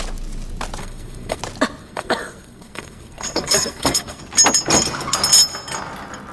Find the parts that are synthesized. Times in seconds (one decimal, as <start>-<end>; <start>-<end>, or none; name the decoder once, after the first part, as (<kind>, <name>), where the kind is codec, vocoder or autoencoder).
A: 0.8-1.4 (codec, SNAC); 1.8-4.2